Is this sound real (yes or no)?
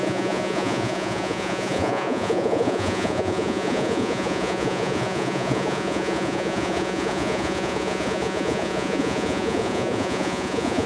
no